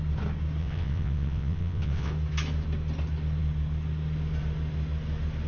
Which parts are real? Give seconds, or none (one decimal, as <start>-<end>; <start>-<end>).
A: 0.0-0.6; 2.1-5.5